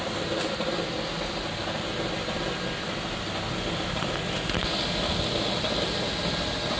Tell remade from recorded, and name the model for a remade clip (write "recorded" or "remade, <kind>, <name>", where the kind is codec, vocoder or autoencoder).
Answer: recorded